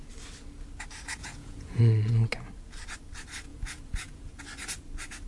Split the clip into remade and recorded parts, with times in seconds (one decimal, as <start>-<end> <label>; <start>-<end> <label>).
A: 0.0-1.2 recorded; 1.2-1.8 remade; 1.8-3.5 recorded; 3.5-4.3 remade; 4.3-5.3 recorded